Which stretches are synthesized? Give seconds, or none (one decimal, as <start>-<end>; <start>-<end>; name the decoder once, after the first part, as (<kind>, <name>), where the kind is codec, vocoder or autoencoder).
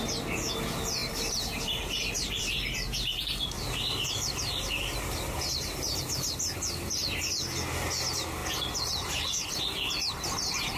1.0-6.0 (vocoder, BigVGAN v2)